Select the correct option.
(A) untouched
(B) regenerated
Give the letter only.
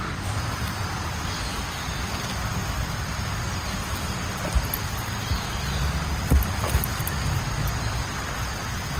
A